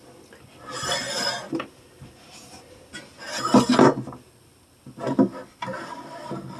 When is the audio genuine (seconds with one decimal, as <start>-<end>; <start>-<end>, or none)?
0.0-6.6